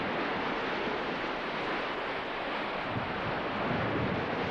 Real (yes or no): yes